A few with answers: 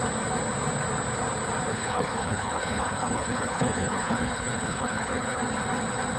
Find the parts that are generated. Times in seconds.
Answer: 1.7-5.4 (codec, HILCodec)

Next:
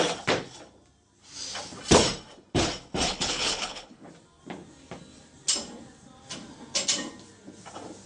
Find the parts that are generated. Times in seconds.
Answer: 3.1-4.1 (codec, HILCodec)

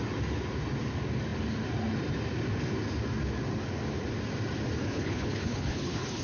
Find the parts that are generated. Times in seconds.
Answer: 4.8-6.2 (codec, HILCodec)

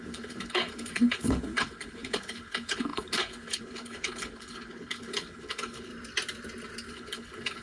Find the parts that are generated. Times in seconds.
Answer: 0.0-5.9 (codec, HILCodec); 6.9-7.6

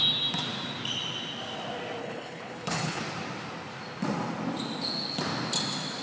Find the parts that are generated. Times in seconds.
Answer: 2.0-3.0 (codec, HILCodec)

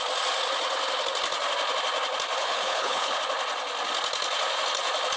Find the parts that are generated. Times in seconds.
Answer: 2.4-3.2 (codec, HILCodec)

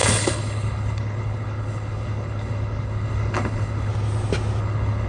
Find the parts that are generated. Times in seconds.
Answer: 0.0-3.9 (codec, HILCodec); 4.6-5.1

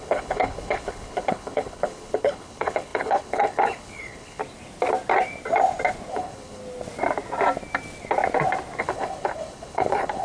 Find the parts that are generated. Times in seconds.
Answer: 0.0-4.4 (codec, HILCodec); 6.1-6.6; 8.8-10.2